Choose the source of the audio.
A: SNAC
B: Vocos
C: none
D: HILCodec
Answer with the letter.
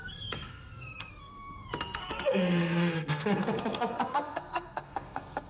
A